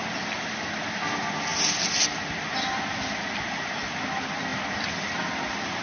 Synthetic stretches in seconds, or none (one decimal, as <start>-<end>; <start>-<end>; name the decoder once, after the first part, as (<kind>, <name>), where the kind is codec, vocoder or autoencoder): none